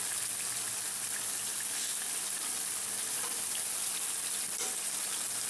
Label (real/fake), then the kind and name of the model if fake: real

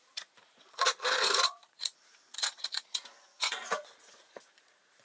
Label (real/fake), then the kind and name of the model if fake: fake, vocoder, Vocos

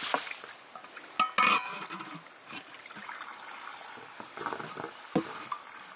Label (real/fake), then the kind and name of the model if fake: real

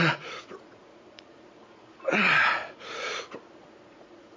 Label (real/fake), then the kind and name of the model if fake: fake, vocoder, Vocos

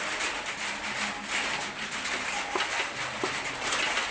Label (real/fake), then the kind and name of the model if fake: real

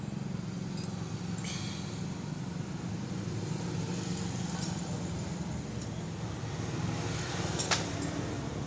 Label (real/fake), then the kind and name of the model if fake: real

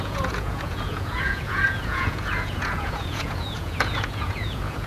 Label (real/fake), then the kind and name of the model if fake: fake, vocoder, Vocos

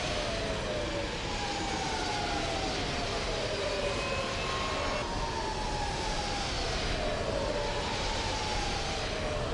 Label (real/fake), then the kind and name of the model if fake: real